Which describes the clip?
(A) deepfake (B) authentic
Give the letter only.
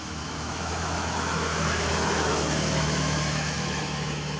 A